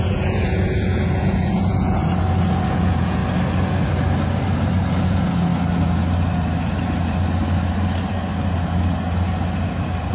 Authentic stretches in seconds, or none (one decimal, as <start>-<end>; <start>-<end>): 2.0-2.7; 3.2-5.0; 5.5-10.1